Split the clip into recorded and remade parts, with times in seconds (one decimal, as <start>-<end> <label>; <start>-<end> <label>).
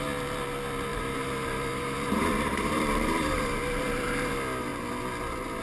0.0-0.9 recorded; 0.9-4.3 remade; 4.3-5.6 recorded